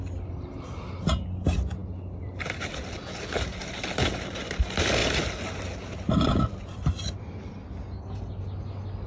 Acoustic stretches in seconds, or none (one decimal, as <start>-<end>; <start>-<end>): 0.0-9.1